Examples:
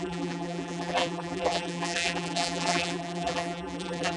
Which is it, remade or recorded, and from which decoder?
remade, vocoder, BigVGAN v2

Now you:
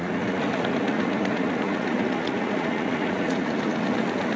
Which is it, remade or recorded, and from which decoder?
remade, vocoder, Vocos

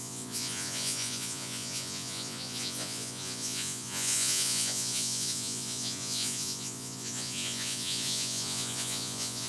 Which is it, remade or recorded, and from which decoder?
remade, vocoder, Vocos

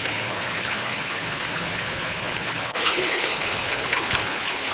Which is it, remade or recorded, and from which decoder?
remade, codec, HILCodec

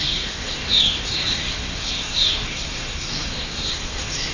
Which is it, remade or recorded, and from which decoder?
remade, codec, SNAC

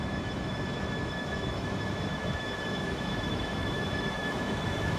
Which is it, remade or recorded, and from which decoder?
remade, autoencoder, DAC-VAE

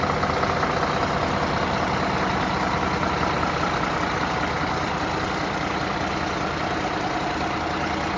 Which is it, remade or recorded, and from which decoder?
recorded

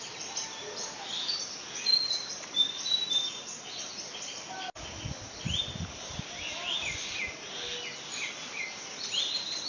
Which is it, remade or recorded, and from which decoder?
recorded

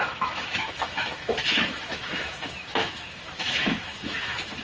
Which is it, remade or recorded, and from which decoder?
remade, autoencoder, DAC-VAE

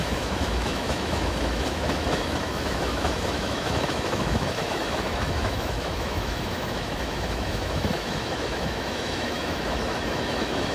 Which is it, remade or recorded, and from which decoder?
remade, autoencoder, DAC-VAE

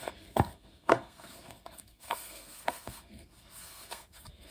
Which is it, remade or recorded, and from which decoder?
remade, codec, SNAC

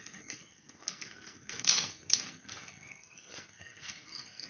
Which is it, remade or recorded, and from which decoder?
remade, codec, SNAC